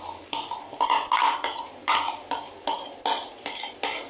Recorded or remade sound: recorded